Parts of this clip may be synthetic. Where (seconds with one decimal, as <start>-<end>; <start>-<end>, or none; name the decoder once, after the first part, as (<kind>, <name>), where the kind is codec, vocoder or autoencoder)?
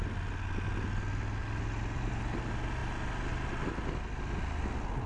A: 1.4-2.1 (vocoder, BigVGAN v2); 2.8-3.3